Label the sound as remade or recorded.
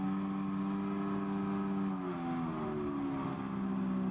recorded